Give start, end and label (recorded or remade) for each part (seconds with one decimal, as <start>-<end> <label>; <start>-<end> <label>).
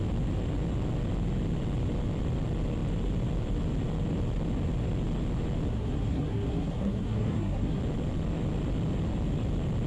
0.0-5.7 recorded; 5.7-7.8 remade; 7.8-9.9 recorded